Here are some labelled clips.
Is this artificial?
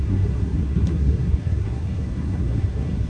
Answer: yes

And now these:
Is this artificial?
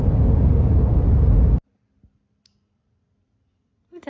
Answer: no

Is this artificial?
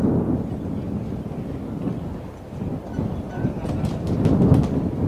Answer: no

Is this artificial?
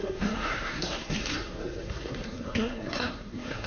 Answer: yes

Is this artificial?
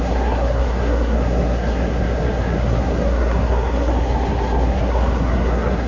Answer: yes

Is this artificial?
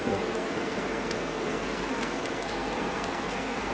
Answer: yes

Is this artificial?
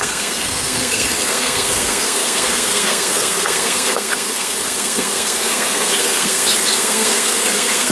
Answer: yes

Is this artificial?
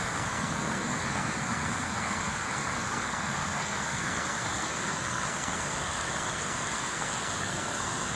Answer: yes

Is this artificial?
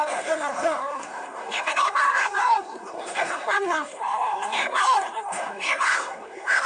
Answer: yes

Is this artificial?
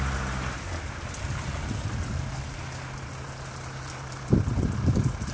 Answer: no